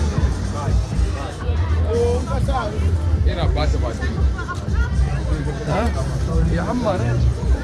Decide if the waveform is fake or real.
fake